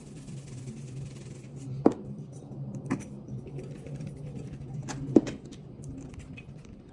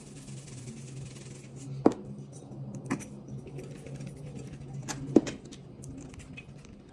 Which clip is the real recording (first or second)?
second